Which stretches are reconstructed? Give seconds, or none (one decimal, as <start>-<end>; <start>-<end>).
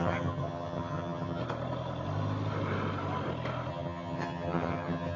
0.0-1.4; 3.7-5.2